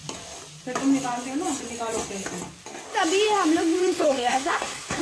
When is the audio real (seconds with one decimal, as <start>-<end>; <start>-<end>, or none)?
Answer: 0.0-3.8